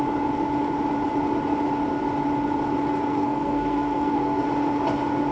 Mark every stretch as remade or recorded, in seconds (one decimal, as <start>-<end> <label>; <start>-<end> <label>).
0.0-3.1 recorded; 3.1-4.4 remade; 4.4-5.3 recorded